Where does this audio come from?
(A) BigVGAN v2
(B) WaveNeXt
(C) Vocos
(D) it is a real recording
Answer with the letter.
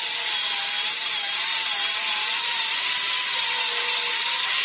D